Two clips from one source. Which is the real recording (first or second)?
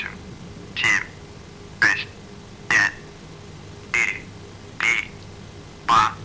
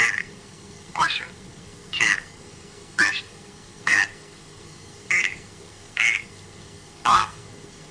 first